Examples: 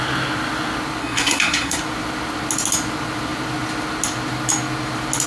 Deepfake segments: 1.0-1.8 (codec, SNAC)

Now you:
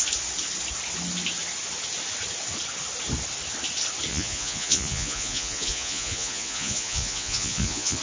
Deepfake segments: 4.1-8.0 (vocoder, Vocos)

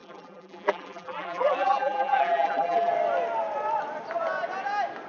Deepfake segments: 0.0-2.9 (vocoder, BigVGAN v2)

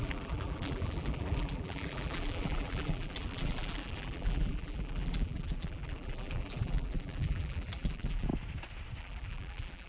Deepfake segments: 0.0-8.3 (vocoder, BigVGAN v2); 9.0-9.9

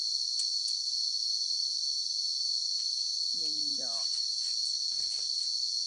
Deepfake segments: 0.0-1.6 (vocoder, Vocos); 3.2-3.7; 5.5-5.9